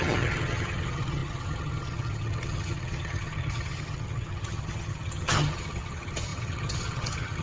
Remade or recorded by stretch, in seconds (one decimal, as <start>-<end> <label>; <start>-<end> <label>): 0.0-7.4 remade